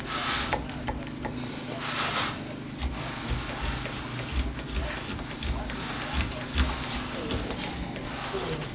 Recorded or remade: recorded